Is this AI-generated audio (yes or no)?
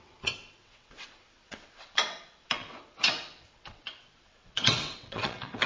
yes